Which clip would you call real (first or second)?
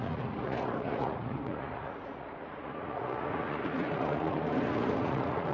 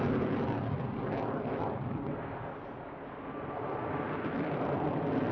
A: second